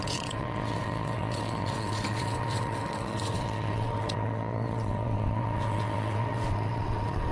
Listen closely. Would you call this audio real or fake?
fake